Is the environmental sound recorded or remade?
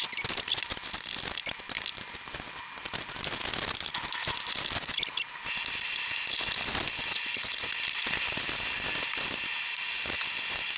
recorded